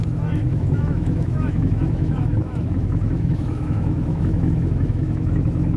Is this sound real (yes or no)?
no